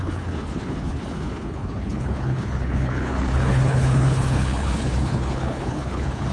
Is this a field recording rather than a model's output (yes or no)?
no